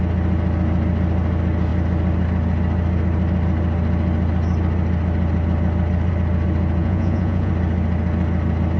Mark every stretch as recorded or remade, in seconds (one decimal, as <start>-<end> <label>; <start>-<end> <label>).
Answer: 0.0-6.8 recorded; 6.8-7.5 remade; 7.5-8.8 recorded